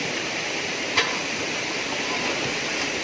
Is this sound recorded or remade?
recorded